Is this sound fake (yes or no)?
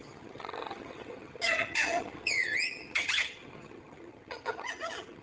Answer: yes